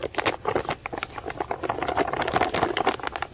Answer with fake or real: real